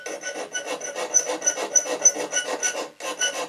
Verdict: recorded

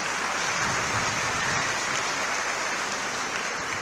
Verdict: recorded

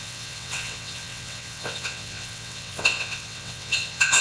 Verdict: remade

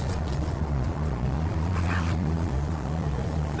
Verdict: remade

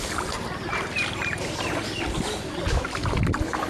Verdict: recorded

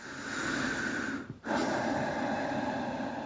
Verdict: recorded